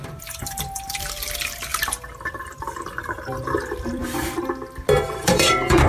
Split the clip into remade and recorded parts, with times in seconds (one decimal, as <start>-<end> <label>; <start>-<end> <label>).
0.0-4.0 remade; 4.0-5.2 recorded; 5.2-5.9 remade